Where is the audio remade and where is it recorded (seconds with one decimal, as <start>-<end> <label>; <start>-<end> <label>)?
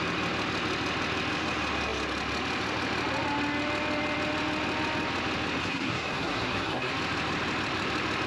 0.0-5.6 recorded; 5.6-6.9 remade; 6.9-8.3 recorded